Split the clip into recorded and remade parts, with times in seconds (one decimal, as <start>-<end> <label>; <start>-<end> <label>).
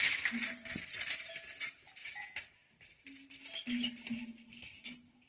0.0-5.3 recorded